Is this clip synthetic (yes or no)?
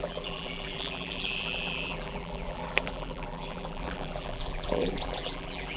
yes